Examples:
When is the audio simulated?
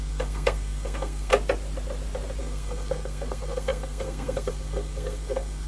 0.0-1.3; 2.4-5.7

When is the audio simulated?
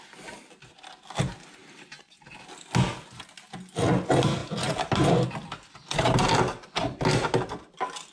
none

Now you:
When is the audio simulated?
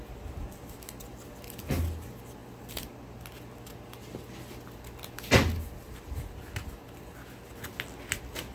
none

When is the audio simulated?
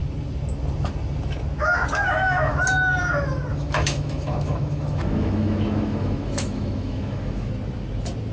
1.8-2.6; 3.5-7.5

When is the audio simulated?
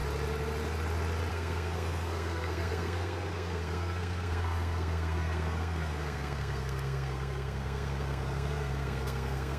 1.3-9.6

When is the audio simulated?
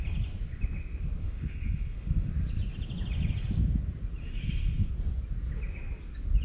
1.2-2.3; 4.2-4.9